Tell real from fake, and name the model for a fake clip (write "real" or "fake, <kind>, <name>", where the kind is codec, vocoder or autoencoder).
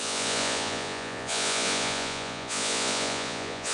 fake, vocoder, Vocos